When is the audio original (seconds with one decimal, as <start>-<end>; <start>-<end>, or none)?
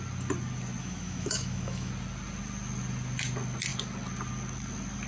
0.0-0.8; 1.9-5.1